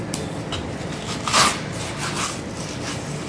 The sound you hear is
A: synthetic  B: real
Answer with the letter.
A